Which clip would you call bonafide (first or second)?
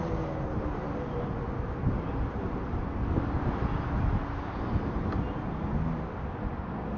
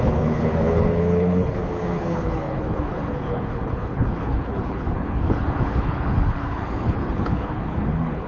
first